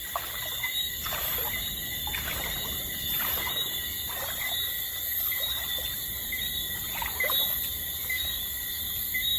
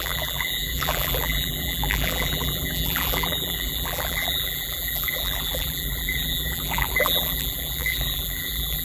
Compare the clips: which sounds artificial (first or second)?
second